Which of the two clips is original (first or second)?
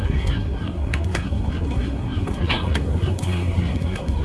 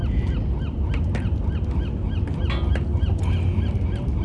second